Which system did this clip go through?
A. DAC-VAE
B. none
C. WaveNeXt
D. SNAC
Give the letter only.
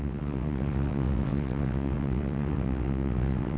C